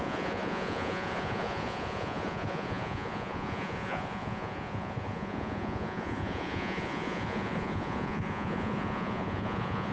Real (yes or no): no